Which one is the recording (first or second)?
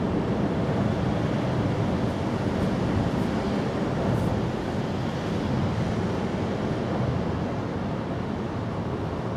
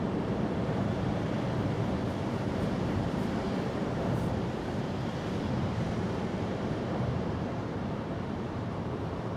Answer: first